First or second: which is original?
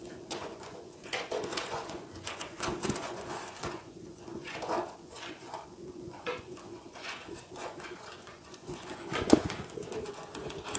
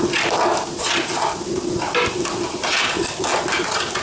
second